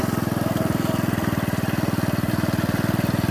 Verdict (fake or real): real